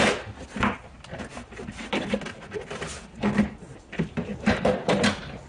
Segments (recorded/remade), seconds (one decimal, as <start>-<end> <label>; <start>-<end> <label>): 0.0-4.3 recorded; 4.3-4.8 remade; 4.8-5.5 recorded